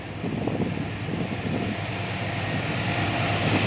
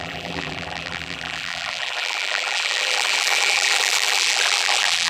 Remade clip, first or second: second